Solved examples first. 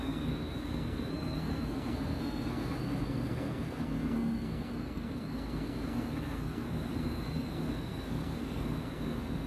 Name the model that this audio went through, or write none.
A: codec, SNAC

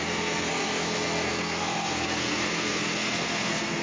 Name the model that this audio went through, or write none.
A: codec, SNAC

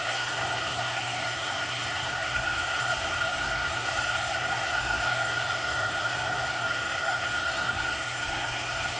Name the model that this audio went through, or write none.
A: codec, SNAC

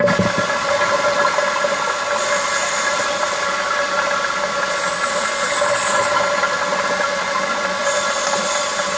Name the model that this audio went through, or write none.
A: none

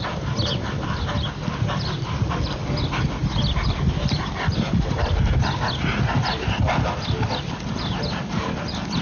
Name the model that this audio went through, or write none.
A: none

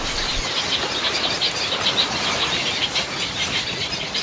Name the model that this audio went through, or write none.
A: none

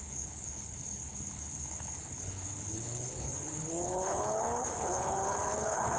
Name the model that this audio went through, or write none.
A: codec, HILCodec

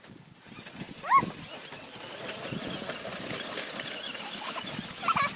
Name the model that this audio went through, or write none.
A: none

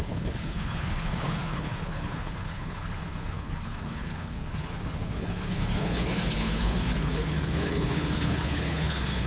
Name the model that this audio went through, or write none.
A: codec, HILCodec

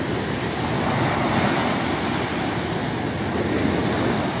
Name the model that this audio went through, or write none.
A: none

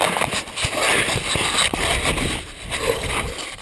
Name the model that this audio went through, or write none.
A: none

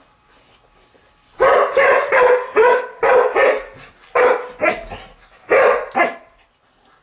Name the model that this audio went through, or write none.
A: none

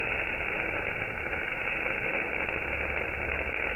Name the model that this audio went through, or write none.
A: none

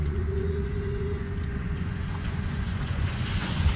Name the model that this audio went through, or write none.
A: vocoder, Vocos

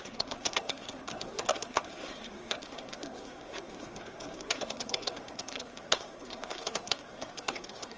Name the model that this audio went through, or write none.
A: codec, SNAC